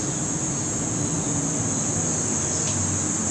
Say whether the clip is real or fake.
real